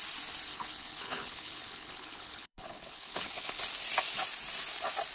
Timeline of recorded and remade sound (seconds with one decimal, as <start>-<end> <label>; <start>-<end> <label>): 0.0-0.5 recorded; 0.5-3.6 remade; 3.6-5.1 recorded